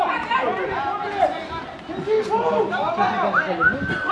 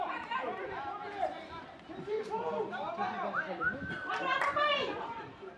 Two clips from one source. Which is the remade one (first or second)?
second